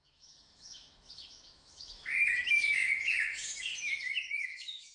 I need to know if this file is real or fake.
fake